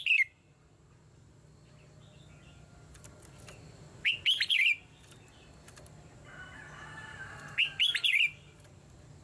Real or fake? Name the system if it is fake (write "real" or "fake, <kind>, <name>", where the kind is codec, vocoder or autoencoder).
real